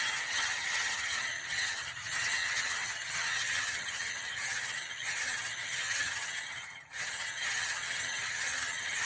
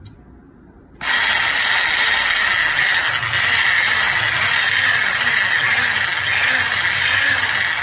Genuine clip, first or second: second